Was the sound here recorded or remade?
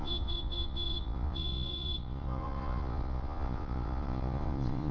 remade